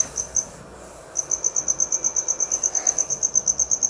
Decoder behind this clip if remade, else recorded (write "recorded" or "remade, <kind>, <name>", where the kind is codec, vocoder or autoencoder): recorded